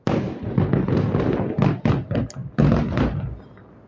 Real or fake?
real